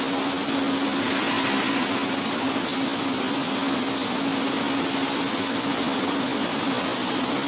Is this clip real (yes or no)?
yes